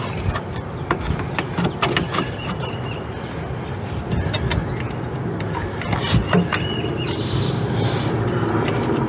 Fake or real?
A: real